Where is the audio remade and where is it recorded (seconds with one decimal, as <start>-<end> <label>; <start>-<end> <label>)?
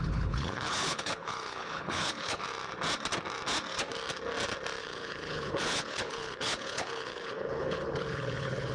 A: 0.0-2.4 remade; 2.4-4.8 recorded; 4.8-8.7 remade